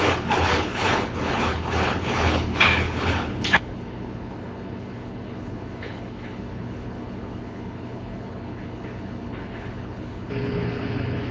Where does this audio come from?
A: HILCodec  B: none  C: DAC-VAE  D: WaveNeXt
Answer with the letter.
A